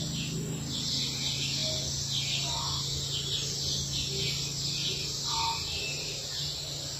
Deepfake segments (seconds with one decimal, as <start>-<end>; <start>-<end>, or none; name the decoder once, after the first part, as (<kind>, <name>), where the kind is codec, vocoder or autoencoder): none